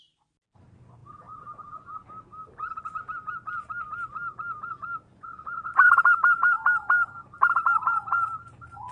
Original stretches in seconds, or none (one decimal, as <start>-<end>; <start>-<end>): 0.0-8.9